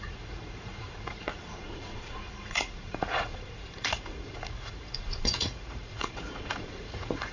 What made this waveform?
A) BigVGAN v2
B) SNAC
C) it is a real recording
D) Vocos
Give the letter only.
D